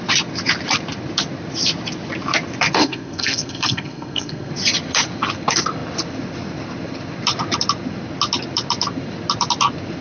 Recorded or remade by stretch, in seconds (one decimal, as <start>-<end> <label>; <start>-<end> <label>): 0.0-2.8 recorded; 2.8-4.5 remade; 4.5-10.0 recorded